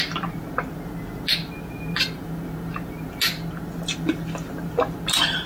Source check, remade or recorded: recorded